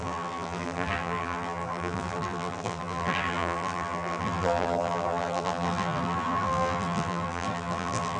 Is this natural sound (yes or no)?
no